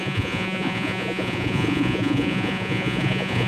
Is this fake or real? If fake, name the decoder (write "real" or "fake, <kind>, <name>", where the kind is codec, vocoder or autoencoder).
fake, vocoder, Vocos